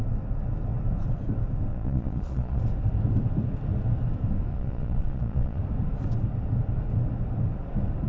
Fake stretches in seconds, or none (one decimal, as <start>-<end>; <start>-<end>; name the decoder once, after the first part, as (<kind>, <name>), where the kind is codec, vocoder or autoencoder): 1.7-2.6 (vocoder, Vocos); 4.5-5.6